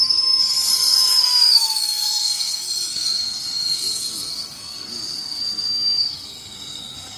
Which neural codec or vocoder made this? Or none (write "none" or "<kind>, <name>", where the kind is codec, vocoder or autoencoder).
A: codec, SNAC